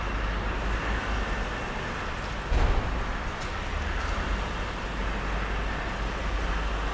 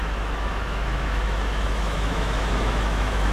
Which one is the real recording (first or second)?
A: first